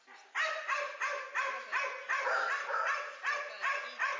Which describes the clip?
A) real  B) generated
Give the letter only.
A